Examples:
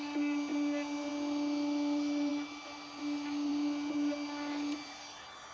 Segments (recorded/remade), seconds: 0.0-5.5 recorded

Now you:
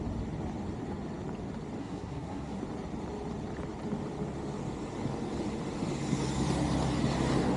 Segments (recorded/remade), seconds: 0.0-1.8 recorded; 1.8-2.6 remade; 2.6-7.6 recorded